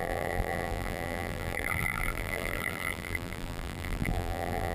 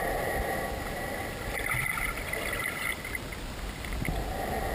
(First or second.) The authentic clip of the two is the second